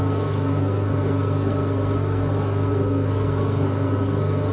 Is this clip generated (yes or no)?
yes